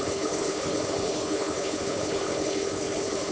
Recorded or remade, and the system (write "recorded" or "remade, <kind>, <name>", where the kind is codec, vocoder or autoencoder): remade, codec, HILCodec